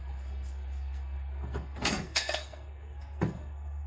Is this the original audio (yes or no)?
no